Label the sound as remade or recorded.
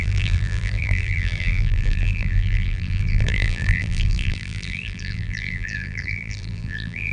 remade